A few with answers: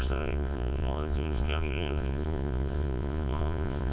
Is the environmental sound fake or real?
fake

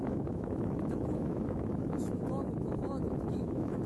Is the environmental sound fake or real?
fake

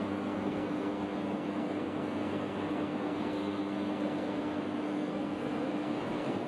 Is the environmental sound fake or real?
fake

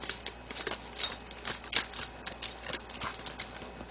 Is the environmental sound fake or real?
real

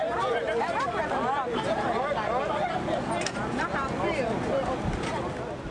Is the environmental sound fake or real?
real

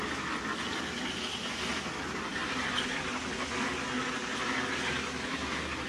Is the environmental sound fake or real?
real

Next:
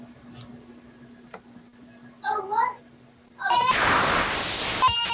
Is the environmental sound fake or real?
real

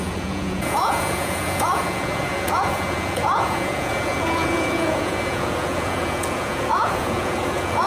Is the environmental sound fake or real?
fake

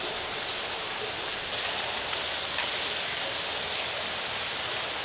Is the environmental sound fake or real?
real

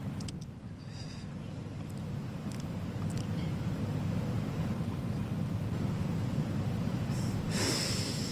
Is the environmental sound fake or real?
real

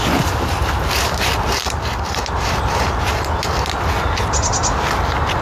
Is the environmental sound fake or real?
real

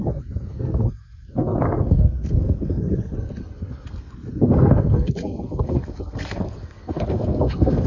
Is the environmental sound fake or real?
fake